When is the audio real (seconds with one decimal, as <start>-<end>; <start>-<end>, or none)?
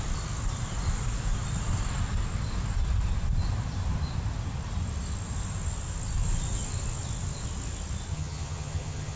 0.0-8.1